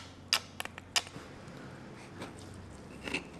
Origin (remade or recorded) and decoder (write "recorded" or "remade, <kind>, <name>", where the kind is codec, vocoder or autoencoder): recorded